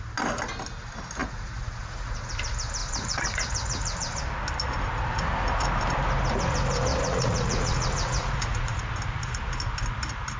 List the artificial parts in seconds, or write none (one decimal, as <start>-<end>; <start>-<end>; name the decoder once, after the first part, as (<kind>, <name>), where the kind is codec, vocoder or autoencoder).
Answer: 1.2-2.3 (vocoder, Vocos); 2.8-4.2; 6.9-8.8